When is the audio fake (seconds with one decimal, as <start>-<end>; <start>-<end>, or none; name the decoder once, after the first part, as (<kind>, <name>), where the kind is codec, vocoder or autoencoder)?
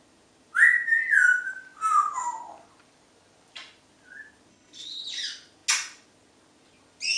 4.5-5.0 (codec, HILCodec)